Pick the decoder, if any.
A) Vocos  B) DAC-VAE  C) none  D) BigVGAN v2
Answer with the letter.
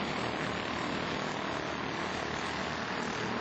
C